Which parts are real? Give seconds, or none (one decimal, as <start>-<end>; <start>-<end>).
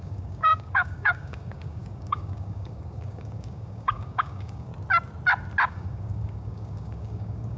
4.7-5.7